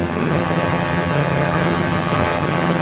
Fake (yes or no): yes